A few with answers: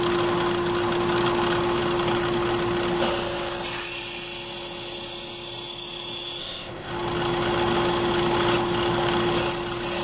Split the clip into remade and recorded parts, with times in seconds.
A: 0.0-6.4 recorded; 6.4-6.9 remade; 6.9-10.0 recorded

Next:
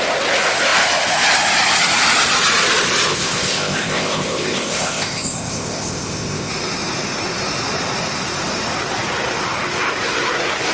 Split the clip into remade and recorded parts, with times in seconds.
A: 0.0-3.1 recorded; 3.1-6.5 remade; 6.5-10.7 recorded

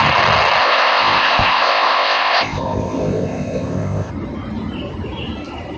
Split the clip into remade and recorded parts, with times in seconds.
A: 0.0-0.6 recorded; 0.6-4.1 remade; 4.1-5.8 recorded

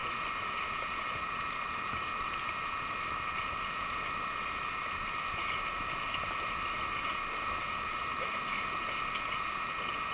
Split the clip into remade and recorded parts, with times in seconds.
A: 0.0-10.1 recorded

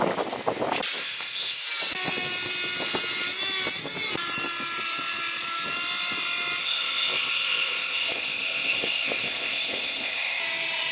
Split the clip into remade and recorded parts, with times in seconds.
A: 0.0-1.0 recorded; 1.0-1.6 remade; 1.6-6.6 recorded; 6.6-10.4 remade; 10.4-10.9 recorded

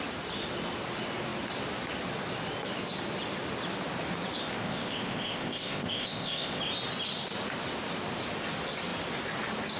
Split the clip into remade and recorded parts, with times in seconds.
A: 0.0-4.4 recorded; 4.4-6.6 remade; 6.6-9.8 recorded